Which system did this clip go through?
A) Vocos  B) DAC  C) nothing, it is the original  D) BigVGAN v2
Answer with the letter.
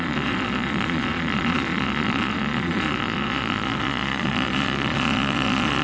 A